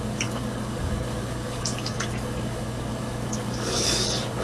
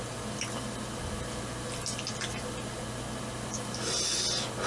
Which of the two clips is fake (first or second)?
first